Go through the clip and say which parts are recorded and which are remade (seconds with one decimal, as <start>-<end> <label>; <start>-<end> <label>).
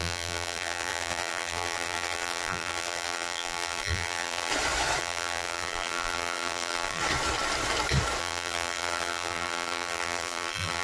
0.0-4.5 remade; 4.5-5.0 recorded; 5.0-7.0 remade; 7.0-8.2 recorded; 8.2-10.8 remade